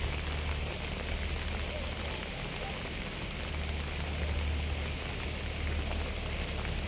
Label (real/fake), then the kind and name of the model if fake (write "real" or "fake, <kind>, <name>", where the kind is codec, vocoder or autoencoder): real